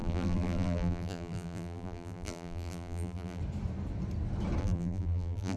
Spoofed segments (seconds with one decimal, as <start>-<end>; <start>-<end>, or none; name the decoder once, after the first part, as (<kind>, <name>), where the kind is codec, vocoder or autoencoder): 0.0-3.4 (vocoder, BigVGAN v2); 4.6-5.6